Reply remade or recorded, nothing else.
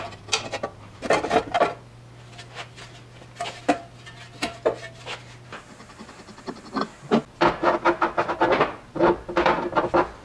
recorded